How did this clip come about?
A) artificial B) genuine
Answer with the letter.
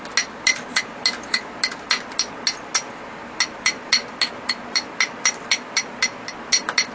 B